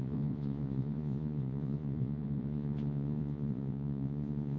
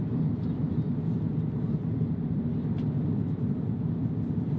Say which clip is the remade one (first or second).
first